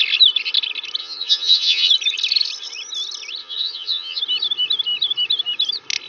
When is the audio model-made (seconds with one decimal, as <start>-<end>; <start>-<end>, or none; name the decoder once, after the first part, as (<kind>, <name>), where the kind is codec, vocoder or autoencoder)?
1.0-1.9 (vocoder, HiFi-GAN); 3.4-4.2